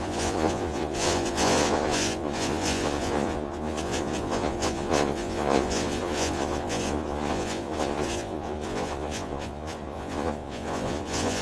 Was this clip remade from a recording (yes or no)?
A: yes